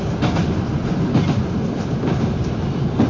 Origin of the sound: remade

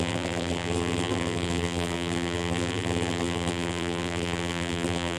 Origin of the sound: remade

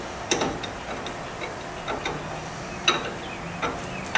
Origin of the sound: recorded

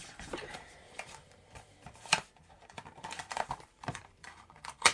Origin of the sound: remade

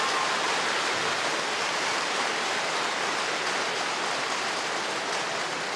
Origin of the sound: recorded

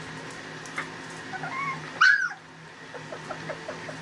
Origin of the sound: recorded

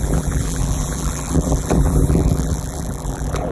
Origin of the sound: remade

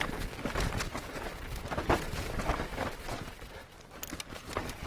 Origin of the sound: recorded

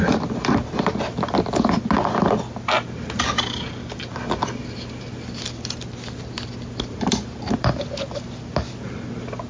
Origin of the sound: recorded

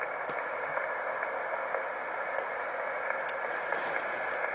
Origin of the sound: recorded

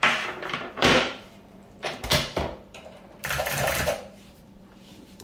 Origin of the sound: remade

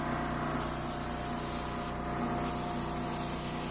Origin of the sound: recorded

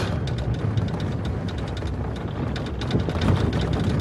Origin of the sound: recorded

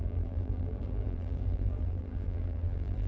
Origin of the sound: remade